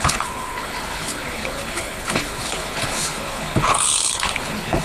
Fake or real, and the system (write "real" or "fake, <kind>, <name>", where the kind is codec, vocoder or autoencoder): fake, codec, HILCodec